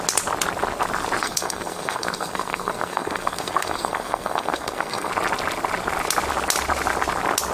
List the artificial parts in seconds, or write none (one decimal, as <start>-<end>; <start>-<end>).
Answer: 1.2-5.1